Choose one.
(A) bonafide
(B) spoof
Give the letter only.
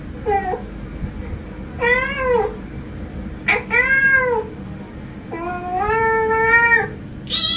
A